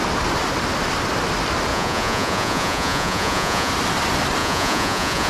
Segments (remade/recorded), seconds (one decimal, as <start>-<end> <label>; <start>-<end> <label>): 0.0-1.7 recorded; 1.7-3.7 remade; 3.7-4.4 recorded; 4.4-5.3 remade